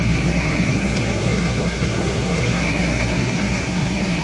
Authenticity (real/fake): fake